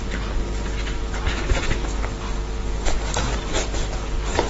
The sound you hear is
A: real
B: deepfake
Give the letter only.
A